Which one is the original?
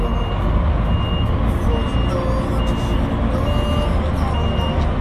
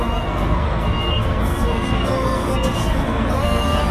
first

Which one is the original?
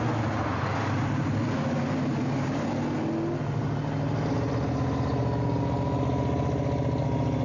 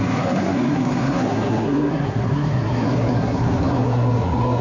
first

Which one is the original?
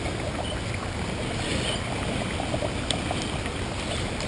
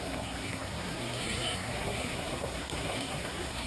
first